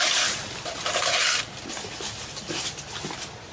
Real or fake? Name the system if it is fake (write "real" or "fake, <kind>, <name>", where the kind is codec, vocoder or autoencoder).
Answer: real